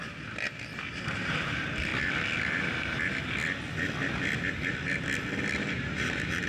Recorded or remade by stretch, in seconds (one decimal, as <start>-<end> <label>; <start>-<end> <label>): 0.0-1.9 remade; 1.9-5.6 recorded; 5.6-6.5 remade